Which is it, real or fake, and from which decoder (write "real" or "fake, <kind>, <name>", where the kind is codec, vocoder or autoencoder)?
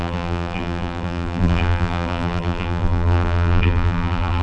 fake, vocoder, BigVGAN v2